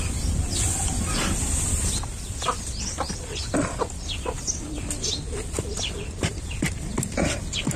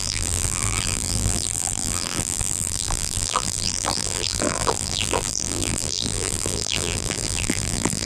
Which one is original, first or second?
first